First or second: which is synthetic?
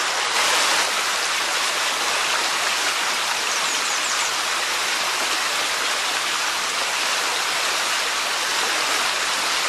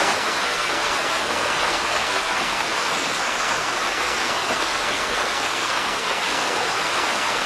second